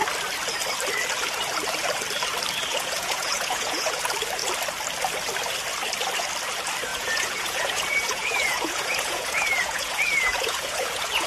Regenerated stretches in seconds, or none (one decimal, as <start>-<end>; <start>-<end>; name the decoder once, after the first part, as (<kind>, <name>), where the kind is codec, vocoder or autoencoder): 2.7-4.0 (vocoder, Vocos); 6.9-11.3